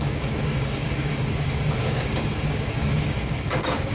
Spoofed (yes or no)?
yes